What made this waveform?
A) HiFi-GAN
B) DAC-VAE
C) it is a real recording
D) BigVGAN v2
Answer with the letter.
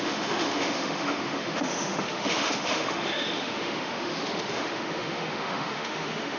B